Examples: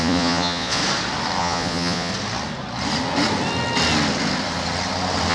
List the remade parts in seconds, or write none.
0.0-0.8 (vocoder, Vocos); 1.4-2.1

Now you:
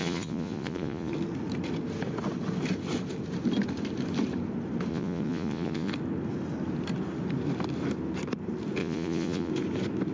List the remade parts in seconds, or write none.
0.0-1.1 (vocoder, Vocos); 4.9-5.9; 8.8-9.5